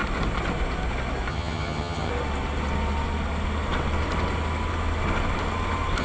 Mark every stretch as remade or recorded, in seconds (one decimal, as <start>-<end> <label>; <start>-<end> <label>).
0.0-1.3 recorded; 1.3-2.1 remade; 2.1-6.0 recorded

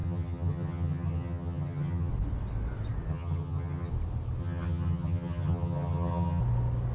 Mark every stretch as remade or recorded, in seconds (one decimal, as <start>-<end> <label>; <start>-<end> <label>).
0.0-2.1 remade; 2.1-3.1 recorded; 3.1-3.9 remade; 3.9-4.4 recorded; 4.4-6.4 remade; 6.4-6.9 recorded